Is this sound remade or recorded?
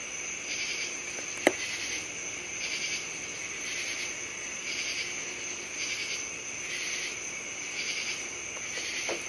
recorded